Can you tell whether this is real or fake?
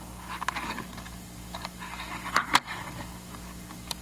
fake